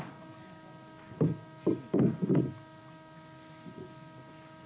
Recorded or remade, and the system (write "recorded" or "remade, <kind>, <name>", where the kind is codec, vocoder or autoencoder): recorded